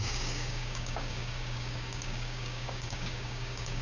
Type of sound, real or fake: fake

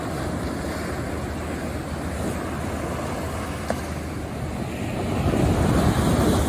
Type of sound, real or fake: real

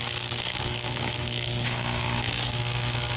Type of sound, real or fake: fake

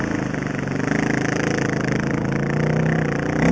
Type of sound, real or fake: real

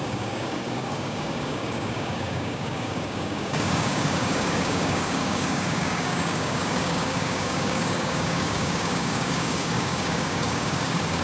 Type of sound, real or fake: fake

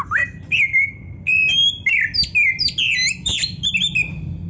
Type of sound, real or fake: real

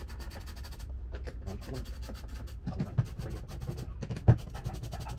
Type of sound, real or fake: real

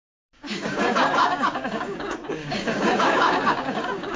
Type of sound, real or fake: fake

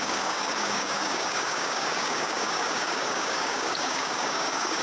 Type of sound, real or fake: fake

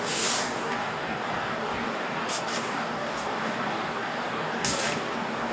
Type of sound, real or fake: fake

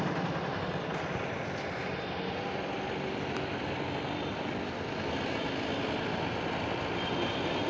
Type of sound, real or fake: real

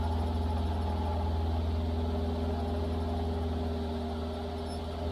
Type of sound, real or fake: real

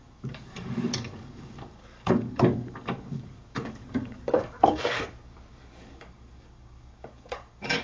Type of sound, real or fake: fake